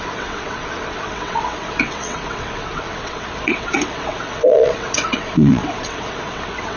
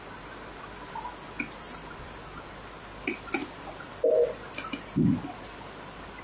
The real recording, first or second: second